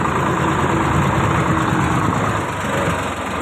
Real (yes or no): yes